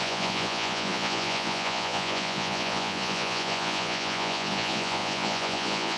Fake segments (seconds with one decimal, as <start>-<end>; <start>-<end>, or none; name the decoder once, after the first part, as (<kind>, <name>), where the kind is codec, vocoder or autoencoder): 0.0-6.0 (vocoder, Vocos)